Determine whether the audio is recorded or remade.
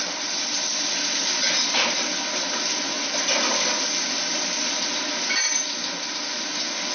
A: recorded